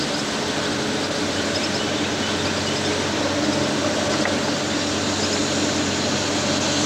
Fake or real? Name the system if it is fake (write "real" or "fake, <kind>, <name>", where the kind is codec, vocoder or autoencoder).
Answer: real